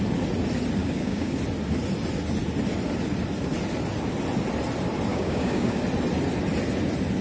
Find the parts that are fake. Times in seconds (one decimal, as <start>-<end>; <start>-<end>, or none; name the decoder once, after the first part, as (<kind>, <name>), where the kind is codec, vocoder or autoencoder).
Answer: 0.8-1.4 (codec, DAC); 5.1-5.8